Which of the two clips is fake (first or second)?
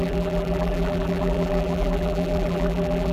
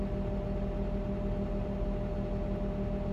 first